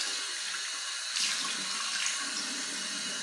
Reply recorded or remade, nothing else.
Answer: recorded